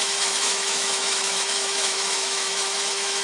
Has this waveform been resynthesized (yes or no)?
yes